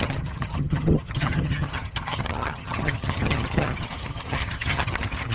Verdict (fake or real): fake